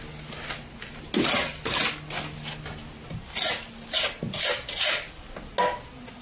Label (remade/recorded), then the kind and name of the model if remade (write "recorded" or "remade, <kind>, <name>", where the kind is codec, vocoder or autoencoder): recorded